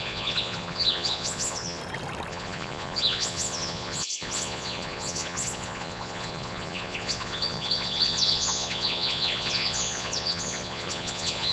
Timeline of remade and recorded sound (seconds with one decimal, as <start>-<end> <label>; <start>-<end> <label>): 0.0-1.8 remade; 1.8-2.3 recorded; 2.3-11.5 remade